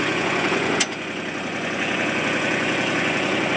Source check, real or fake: fake